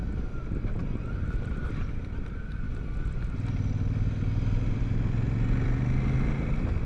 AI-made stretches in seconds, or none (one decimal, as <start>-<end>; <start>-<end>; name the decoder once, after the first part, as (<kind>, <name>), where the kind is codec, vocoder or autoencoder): 1.2-2.7 (vocoder, BigVGAN v2)